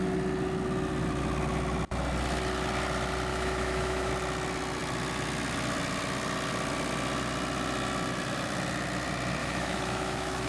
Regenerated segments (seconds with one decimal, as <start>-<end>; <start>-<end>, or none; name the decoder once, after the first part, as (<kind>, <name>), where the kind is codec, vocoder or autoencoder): 3.3-4.1 (autoencoder, DAC-VAE); 9.4-10.5